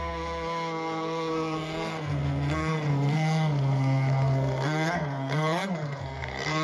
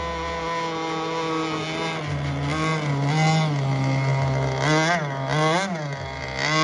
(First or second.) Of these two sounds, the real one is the second